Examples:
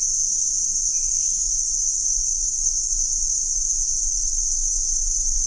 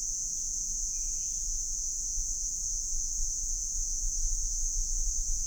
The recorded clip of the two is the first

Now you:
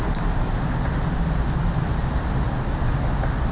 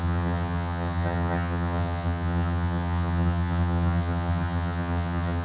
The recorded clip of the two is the first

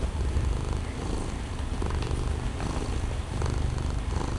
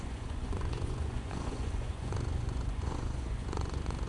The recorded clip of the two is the first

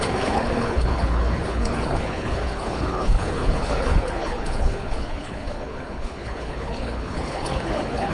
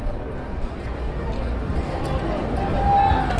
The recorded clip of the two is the second